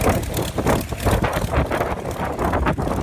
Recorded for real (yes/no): yes